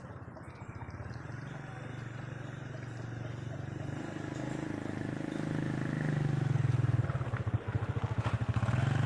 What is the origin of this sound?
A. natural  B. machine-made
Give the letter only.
A